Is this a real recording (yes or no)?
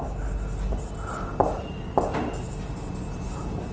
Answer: yes